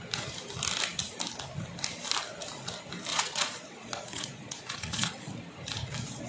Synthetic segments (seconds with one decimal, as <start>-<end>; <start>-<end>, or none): 3.1-5.3